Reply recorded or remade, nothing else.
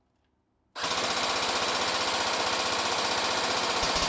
recorded